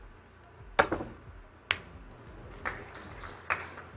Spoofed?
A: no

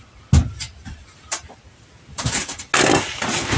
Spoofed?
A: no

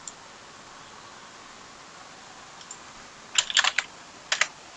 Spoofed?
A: no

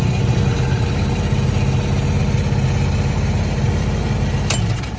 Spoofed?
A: no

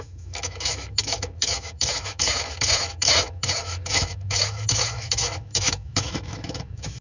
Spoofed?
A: yes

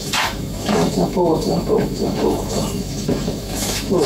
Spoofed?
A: yes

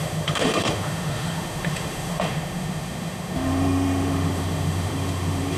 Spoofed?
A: yes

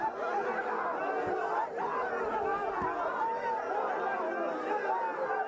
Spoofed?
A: no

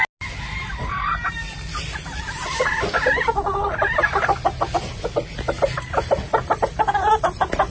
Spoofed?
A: no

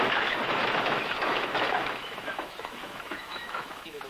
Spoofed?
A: yes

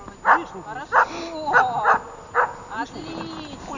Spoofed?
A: no